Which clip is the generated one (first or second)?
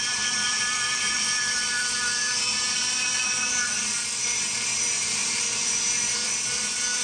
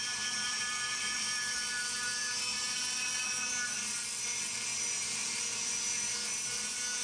first